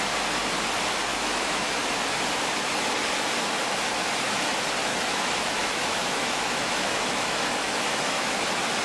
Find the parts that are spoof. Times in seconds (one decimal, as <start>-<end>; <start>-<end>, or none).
1.1-1.8; 4.9-8.3